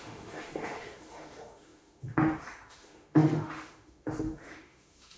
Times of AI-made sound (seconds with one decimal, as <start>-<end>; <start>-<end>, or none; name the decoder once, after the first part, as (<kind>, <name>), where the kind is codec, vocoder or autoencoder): 0.0-5.2 (autoencoder, DAC-VAE)